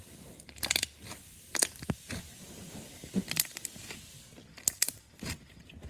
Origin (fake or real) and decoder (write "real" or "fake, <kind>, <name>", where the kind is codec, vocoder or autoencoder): real